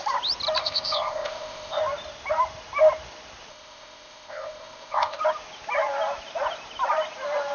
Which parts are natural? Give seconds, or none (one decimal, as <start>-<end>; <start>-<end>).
0.0-0.6; 1.8-3.5; 5.2-7.5